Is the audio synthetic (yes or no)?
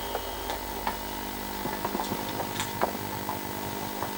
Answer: no